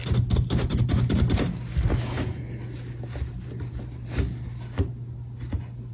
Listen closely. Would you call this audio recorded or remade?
recorded